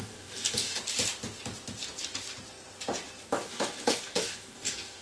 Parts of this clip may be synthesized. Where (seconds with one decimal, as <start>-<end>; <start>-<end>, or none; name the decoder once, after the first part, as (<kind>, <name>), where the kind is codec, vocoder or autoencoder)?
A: 0.0-0.8 (codec, DAC); 3.3-5.0